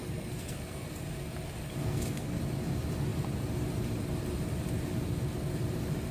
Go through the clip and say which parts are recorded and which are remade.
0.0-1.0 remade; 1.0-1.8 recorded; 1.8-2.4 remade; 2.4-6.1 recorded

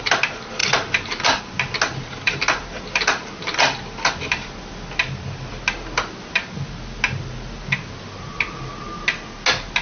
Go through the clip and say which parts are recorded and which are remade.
0.0-9.8 recorded

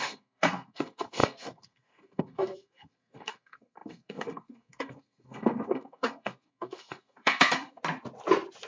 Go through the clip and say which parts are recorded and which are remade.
0.0-7.8 remade; 7.8-8.7 recorded

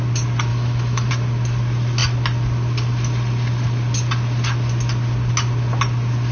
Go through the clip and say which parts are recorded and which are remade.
0.0-0.5 recorded; 0.5-1.1 remade; 1.1-6.3 recorded